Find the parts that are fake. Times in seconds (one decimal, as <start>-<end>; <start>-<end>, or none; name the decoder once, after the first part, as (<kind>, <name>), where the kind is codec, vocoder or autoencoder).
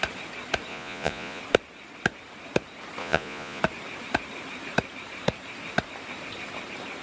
0.7-1.4 (vocoder, Vocos); 3.0-3.6